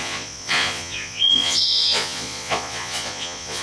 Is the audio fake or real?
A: fake